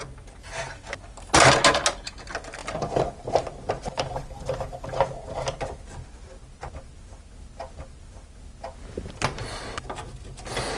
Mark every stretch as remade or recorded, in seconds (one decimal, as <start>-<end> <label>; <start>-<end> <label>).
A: 0.0-10.8 recorded